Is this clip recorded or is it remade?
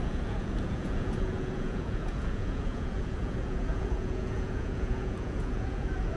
remade